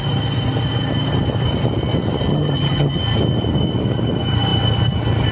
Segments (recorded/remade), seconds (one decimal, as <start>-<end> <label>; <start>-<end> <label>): 0.0-2.3 recorded; 2.3-3.0 remade; 3.0-5.3 recorded